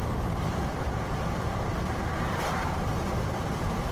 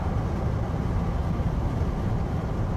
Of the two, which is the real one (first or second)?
second